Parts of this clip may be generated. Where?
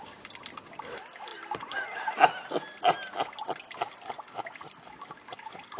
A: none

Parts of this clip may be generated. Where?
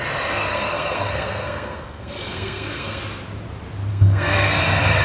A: 0.5-3.0 (codec, SNAC); 3.9-4.6